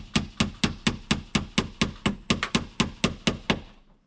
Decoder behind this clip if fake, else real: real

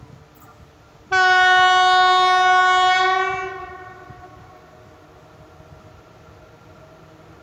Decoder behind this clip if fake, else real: real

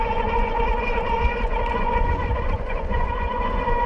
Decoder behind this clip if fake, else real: fake, vocoder, Vocos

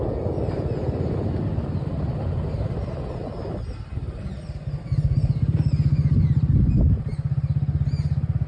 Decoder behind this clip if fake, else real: real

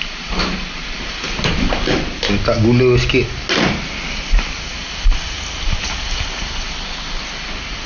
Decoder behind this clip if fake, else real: real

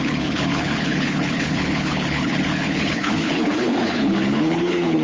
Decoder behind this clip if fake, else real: fake, codec, HILCodec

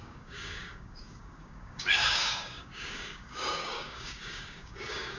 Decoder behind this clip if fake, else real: fake, codec, DAC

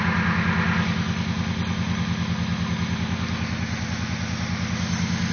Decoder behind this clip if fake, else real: real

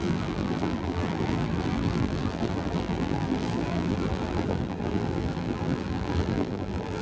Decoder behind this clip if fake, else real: fake, vocoder, BigVGAN v2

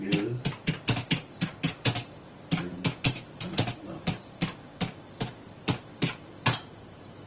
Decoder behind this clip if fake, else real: fake, vocoder, BigVGAN v2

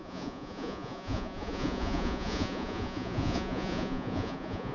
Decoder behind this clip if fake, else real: fake, vocoder, Vocos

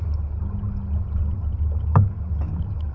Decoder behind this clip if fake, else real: real